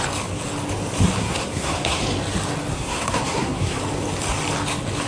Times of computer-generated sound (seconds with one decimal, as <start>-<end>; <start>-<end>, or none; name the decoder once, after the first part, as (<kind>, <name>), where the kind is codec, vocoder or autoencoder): 1.2-2.0 (codec, SNAC); 2.7-3.8